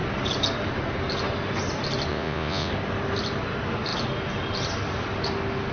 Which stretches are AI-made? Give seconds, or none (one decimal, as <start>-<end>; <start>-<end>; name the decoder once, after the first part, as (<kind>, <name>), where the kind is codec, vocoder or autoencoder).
2.1-2.7 (vocoder, Vocos)